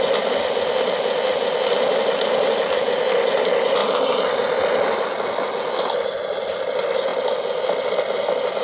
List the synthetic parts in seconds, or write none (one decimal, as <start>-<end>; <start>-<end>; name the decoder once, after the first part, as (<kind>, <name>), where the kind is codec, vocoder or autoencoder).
3.8-5.5 (vocoder, BigVGAN v2)